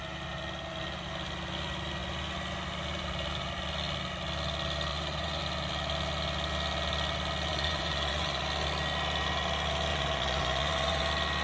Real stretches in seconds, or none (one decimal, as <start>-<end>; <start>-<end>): 0.0-4.9; 5.4-7.5; 8.4-9.9; 11.0-11.4